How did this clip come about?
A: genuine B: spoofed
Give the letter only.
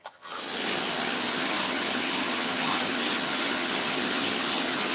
B